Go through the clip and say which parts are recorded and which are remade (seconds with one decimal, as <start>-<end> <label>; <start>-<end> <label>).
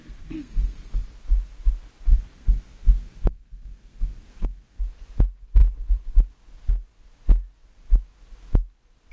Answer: 0.0-1.1 remade; 1.1-2.1 recorded; 2.1-4.8 remade; 4.8-9.1 recorded